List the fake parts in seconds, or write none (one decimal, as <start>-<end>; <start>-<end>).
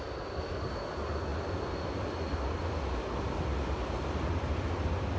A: none